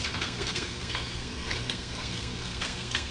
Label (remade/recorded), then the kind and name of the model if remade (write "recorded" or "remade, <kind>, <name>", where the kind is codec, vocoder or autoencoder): remade, codec, SNAC